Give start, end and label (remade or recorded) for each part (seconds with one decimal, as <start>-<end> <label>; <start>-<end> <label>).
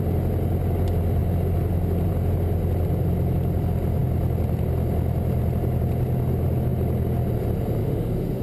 0.0-7.8 recorded; 7.8-8.4 remade